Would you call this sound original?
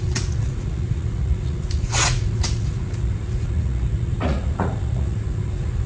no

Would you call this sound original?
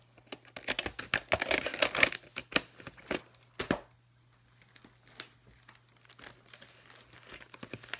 yes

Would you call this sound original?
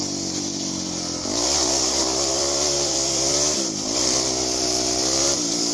no